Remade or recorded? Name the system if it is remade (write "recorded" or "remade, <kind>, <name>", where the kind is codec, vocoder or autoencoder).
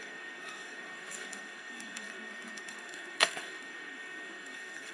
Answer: remade, codec, SNAC